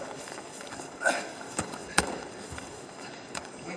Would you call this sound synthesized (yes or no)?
yes